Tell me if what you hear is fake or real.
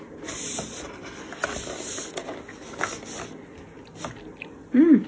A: real